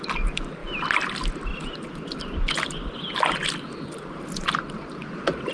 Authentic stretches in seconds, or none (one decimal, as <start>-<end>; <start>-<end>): 0.0-5.5